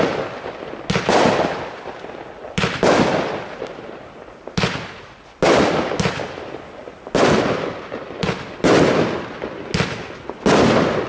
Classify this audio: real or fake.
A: real